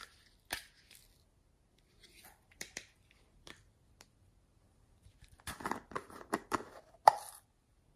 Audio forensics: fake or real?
real